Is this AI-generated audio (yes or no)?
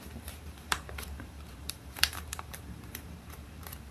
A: yes